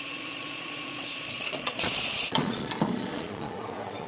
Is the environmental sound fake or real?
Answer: fake